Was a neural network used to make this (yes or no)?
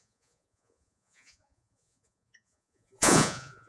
yes